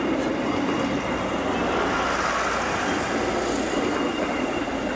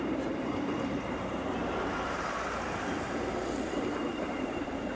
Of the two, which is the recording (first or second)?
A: first